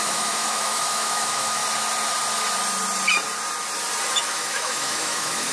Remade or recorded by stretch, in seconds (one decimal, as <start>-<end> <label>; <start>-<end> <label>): 0.0-1.6 remade; 1.6-4.2 recorded; 4.2-5.5 remade